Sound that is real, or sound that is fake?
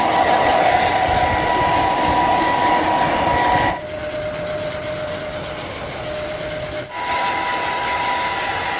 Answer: real